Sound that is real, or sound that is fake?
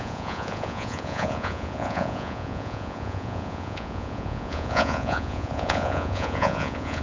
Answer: fake